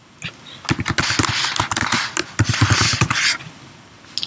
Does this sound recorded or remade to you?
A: recorded